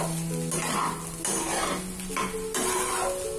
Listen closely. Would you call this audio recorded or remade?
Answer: recorded